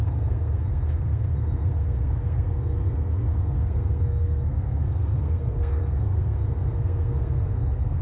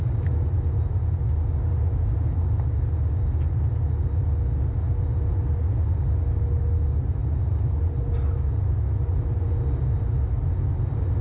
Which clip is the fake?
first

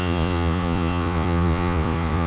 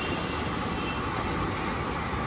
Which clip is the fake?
first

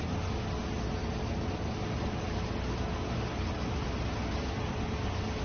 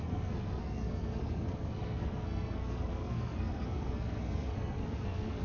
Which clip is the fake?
second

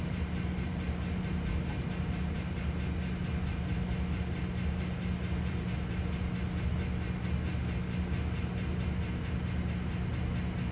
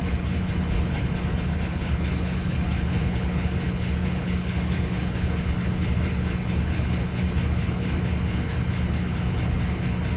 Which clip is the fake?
second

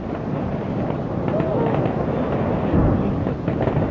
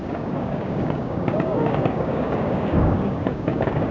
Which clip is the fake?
second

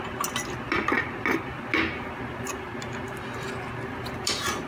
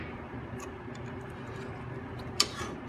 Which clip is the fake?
second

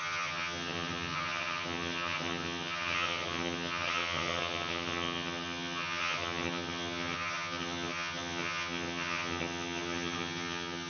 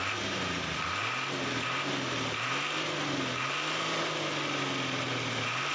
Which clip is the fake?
first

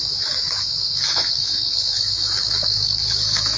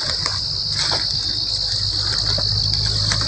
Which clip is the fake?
first